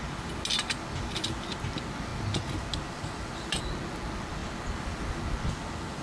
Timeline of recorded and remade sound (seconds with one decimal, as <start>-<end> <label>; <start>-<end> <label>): 0.0-6.0 recorded